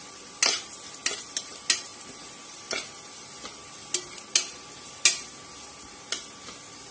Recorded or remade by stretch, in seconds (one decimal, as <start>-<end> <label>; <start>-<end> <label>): 0.0-6.9 recorded